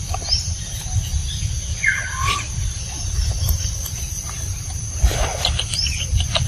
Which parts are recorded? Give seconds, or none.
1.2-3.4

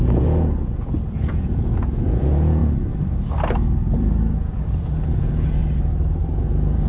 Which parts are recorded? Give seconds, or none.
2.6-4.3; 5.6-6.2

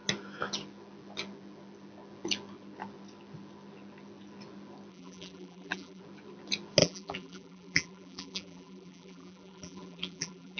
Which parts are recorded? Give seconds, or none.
0.0-4.9; 6.0-6.8